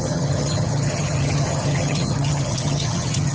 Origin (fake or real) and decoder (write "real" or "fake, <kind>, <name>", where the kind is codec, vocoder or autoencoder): fake, vocoder, HiFi-GAN